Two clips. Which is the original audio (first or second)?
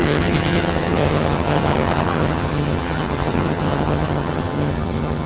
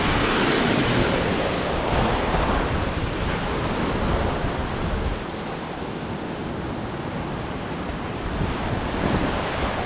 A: second